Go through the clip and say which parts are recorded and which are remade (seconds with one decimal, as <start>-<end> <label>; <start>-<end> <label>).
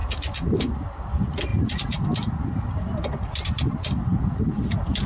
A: 0.0-5.1 recorded